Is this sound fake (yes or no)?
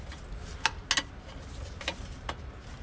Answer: no